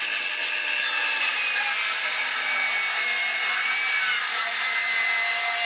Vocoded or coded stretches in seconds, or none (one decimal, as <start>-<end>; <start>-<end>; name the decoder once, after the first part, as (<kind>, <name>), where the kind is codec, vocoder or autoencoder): none